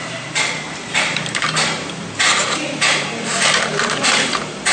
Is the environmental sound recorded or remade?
remade